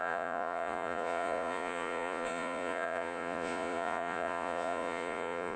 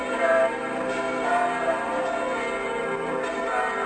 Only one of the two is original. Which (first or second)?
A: second